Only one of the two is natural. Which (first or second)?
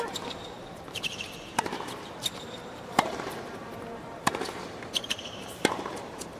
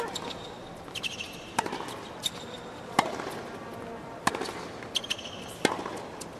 second